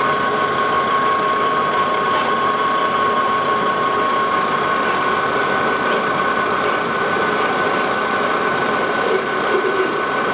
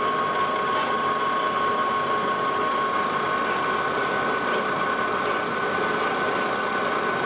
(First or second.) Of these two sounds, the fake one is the first